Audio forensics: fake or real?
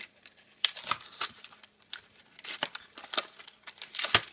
real